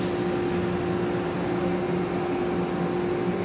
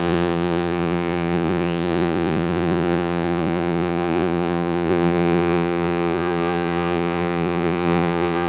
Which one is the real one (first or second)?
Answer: first